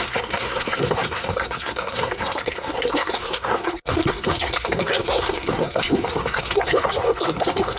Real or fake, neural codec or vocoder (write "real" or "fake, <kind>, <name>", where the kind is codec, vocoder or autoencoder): fake, codec, SNAC